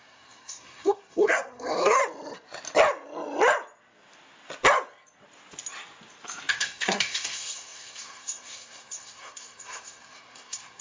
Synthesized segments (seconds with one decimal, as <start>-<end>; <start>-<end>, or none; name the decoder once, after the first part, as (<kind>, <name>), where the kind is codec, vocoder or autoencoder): 0.0-2.0 (codec, SNAC); 6.5-10.8